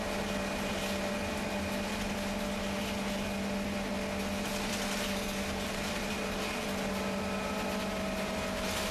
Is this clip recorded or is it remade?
recorded